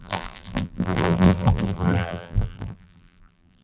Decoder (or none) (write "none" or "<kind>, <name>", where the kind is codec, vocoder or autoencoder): vocoder, BigVGAN v2